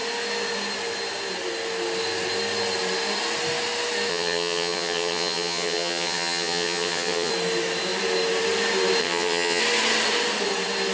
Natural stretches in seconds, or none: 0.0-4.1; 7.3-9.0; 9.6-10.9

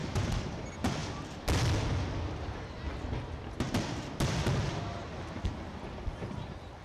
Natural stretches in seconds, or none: 0.6-6.8

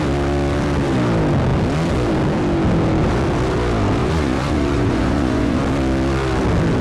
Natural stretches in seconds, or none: 0.0-4.0; 5.6-6.8

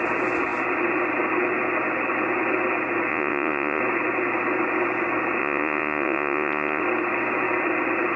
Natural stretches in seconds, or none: 0.0-3.1; 3.8-5.4; 6.8-8.2

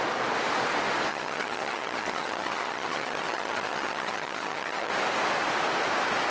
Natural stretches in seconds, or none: 0.0-1.1; 4.9-6.3

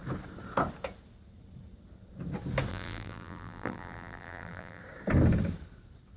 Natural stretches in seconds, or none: 0.0-2.7; 4.8-6.2

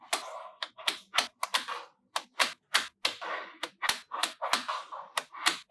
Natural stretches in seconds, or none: 0.0-5.7

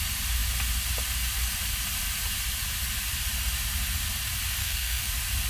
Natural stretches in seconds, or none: 0.0-4.6; 5.1-5.5